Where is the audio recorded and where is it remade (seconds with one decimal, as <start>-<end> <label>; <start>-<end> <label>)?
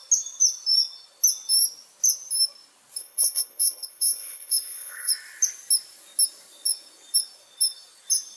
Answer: 0.0-3.0 recorded; 3.0-5.1 remade; 5.1-8.4 recorded